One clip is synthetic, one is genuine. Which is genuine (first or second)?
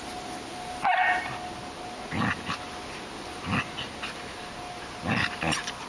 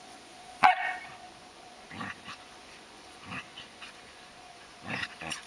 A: first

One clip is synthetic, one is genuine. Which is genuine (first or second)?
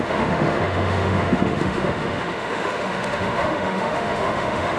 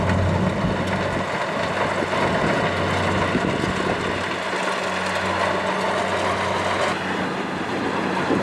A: second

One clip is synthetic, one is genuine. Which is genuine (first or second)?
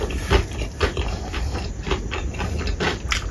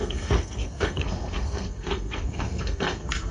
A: first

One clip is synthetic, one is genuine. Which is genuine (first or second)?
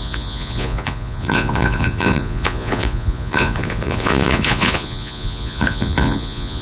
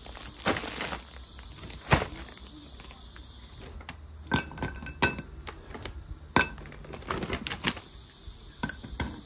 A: second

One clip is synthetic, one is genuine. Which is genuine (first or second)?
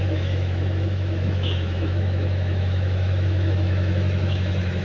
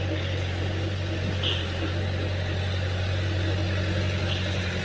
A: second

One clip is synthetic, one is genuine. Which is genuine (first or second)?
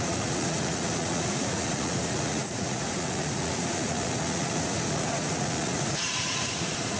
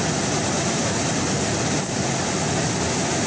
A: second